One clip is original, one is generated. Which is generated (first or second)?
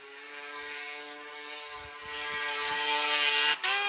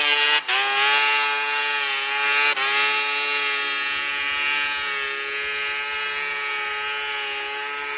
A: first